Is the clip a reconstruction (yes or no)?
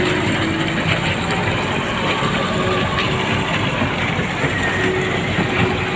no